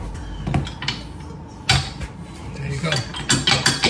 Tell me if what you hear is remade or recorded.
recorded